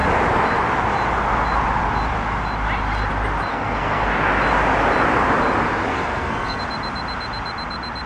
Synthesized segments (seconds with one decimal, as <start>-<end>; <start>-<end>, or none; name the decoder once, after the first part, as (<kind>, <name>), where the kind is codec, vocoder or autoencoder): 3.5-4.1 (codec, SNAC); 5.9-6.6